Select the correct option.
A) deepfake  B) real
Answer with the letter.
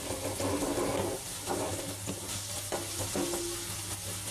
B